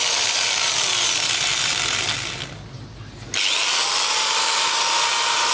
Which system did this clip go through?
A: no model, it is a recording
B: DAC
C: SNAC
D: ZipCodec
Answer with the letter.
A